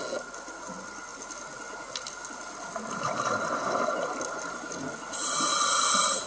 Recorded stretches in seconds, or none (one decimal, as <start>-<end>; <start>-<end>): 0.0-6.3